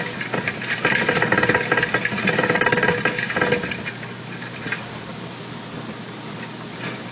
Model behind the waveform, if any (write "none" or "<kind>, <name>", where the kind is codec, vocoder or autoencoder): none